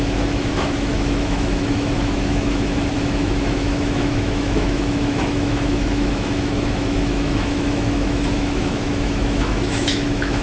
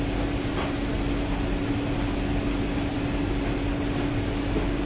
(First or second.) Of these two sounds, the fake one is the first